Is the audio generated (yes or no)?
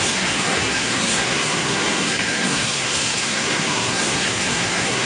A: yes